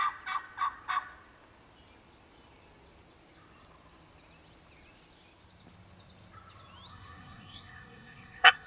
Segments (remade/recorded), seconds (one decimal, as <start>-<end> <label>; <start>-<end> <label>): 0.0-6.9 recorded; 6.9-8.7 remade